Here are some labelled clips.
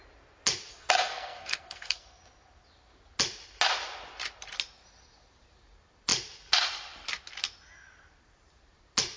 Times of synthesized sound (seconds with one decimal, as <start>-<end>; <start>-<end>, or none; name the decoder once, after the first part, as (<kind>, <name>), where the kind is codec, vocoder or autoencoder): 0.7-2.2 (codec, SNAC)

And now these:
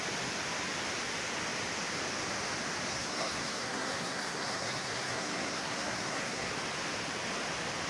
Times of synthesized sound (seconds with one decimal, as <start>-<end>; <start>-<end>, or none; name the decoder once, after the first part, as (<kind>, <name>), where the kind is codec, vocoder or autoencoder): 2.9-6.5 (codec, SNAC)

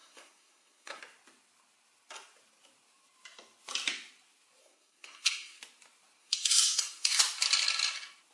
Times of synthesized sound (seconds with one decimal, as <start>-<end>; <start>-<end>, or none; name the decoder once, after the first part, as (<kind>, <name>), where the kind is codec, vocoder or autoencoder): 0.0-1.0 (codec, SNAC); 4.6-5.6; 6.2-7.2